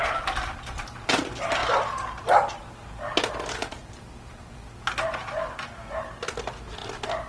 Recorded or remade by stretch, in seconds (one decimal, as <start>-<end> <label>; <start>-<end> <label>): 0.0-7.3 recorded